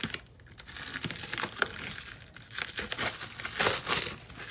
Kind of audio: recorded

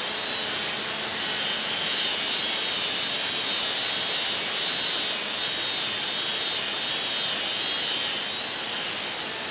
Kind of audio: recorded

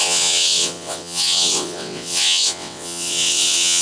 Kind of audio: remade